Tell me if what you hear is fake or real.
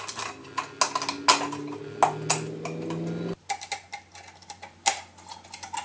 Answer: real